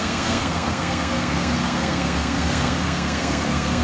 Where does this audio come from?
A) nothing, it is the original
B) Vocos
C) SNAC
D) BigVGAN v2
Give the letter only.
C